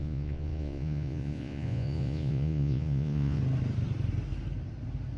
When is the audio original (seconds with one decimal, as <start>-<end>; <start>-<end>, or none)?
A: 3.4-5.2